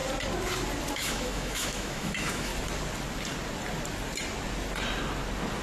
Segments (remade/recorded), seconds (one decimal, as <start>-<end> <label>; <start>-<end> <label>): 0.0-0.9 recorded; 0.9-2.5 remade; 2.5-5.6 recorded